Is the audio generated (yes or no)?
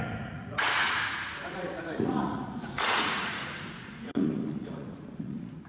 yes